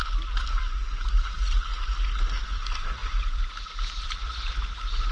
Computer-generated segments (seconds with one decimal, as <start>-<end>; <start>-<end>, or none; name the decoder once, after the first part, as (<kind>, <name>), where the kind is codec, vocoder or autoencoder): none